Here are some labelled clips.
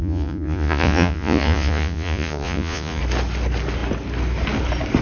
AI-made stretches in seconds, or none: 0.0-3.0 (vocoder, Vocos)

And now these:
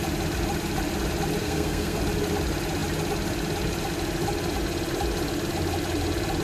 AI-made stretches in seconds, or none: 1.4-2.0 (codec, SNAC)

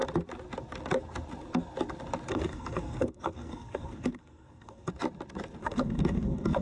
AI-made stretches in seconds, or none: 2.3-4.9 (codec, SNAC); 5.6-6.6

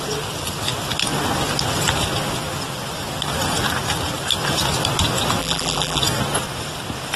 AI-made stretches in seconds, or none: 5.4-6.0 (vocoder, BigVGAN v2)

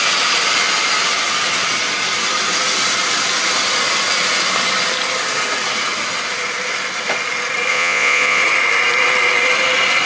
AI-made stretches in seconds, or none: 7.7-8.4 (vocoder, Vocos)

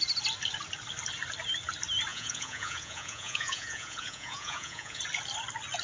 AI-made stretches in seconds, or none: 2.1-5.0 (vocoder, Vocos)